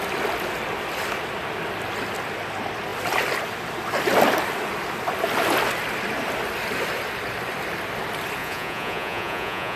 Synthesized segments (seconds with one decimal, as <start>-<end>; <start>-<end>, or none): 8.4-9.8